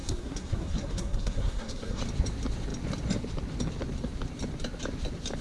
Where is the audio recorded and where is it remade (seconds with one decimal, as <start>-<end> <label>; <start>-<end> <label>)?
0.0-2.0 remade; 2.0-5.4 recorded